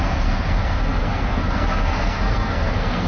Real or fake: fake